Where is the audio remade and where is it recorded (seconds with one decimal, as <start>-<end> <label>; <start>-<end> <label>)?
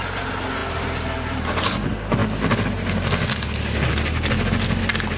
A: 0.0-5.2 recorded